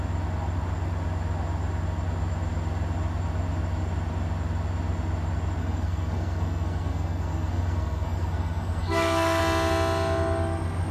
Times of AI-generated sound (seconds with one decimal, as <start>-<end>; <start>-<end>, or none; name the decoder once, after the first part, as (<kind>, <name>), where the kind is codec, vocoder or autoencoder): 5.6-9.4 (codec, SNAC)